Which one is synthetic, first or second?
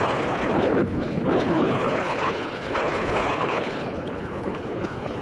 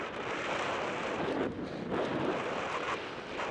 first